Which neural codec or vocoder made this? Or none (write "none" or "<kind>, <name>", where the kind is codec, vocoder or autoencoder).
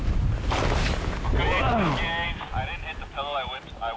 none